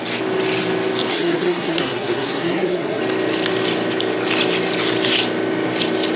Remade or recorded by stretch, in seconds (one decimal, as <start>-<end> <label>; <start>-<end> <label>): 0.0-1.1 recorded; 1.1-3.0 remade; 3.0-6.2 recorded